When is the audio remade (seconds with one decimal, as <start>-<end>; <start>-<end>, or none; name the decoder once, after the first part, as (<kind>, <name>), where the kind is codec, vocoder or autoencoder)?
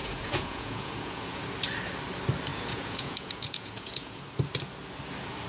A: 0.0-1.4 (vocoder, Vocos); 2.5-4.2